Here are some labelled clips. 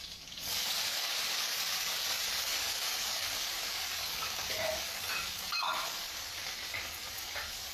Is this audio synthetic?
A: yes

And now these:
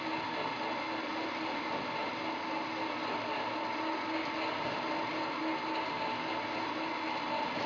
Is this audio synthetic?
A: no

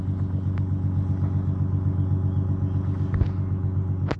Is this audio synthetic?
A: no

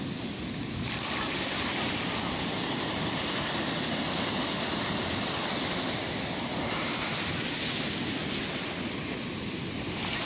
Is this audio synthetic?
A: no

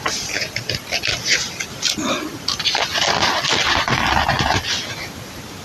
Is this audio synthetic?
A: no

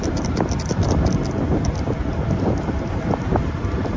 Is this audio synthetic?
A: yes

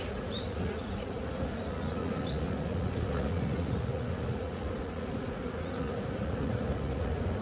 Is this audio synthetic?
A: yes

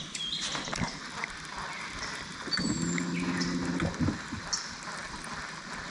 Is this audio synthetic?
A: no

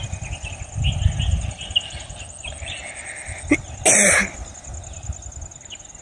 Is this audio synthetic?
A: no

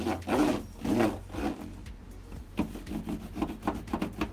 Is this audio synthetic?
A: no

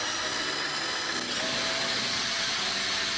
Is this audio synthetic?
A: no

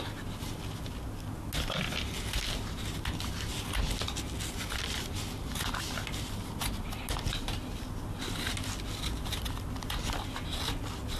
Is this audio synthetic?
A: no